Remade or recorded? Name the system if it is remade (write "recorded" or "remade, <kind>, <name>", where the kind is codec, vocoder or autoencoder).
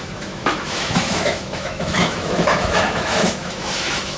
remade, autoencoder, DAC-VAE